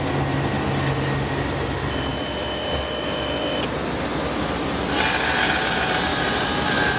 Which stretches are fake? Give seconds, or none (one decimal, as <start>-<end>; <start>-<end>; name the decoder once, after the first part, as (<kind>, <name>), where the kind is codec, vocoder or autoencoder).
2.1-2.8 (vocoder, BigVGAN v2)